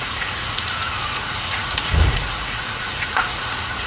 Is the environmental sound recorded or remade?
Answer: remade